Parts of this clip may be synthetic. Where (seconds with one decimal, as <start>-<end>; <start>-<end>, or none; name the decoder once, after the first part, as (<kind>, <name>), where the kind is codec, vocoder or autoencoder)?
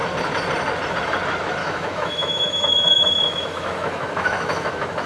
1.6-5.1 (autoencoder, DAC-VAE)